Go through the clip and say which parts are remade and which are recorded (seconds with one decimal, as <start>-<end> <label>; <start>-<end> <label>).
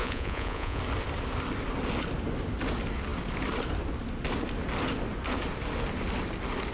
0.0-0.8 remade; 0.8-6.7 recorded